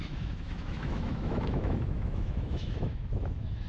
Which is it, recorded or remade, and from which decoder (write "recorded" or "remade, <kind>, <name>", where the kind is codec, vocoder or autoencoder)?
remade, autoencoder, DAC-VAE